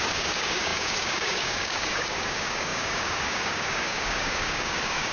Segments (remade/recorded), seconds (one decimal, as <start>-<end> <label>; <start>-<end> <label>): 0.0-5.1 remade